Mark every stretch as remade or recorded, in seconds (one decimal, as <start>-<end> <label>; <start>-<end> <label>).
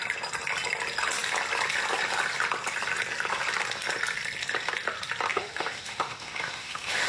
0.0-5.3 recorded; 5.3-7.1 remade